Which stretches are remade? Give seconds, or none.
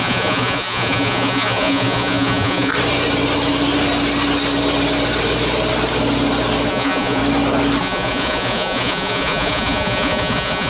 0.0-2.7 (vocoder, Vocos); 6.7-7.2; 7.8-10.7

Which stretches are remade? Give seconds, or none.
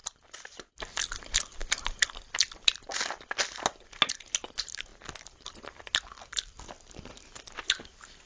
none